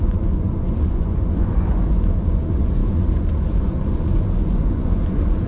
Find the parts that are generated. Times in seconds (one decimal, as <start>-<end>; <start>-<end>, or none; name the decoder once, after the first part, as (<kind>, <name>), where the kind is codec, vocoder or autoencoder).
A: 0.0-5.5 (vocoder, Vocos)